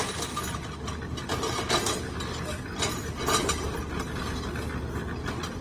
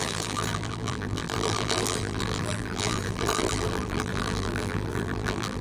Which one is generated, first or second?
second